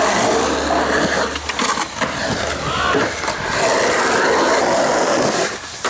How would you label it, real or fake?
real